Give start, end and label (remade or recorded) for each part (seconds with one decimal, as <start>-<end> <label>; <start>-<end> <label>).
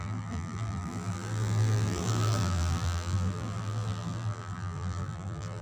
0.0-5.6 remade